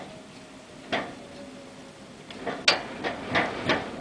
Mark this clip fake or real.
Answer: real